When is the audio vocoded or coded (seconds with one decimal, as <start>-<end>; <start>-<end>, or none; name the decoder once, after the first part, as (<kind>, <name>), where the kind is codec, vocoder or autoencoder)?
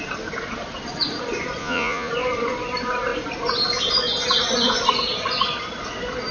1.6-2.1 (vocoder, Vocos)